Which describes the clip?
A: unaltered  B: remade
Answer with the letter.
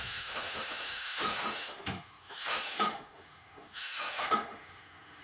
B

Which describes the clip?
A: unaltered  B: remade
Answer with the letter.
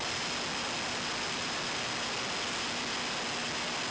A